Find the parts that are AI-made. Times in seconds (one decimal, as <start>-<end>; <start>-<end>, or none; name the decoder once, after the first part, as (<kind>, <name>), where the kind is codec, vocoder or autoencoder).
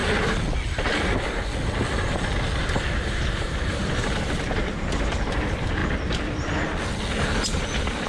2.6-5.1 (vocoder, BigVGAN v2); 7.5-8.1